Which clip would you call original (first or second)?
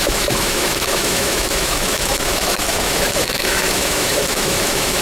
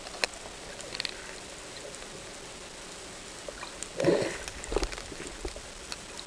second